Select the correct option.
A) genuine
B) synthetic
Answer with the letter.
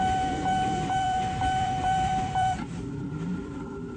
B